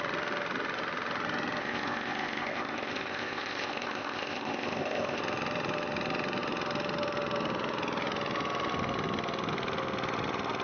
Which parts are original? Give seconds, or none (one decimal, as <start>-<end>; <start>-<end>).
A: 0.0-1.6; 5.2-10.6